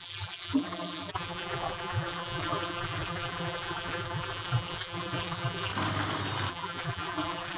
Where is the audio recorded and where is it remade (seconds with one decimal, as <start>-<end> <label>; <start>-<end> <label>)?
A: 0.0-5.7 remade; 5.7-6.5 recorded; 6.5-7.6 remade